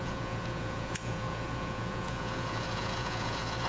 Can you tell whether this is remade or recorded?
remade